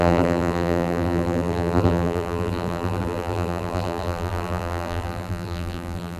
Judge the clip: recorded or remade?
remade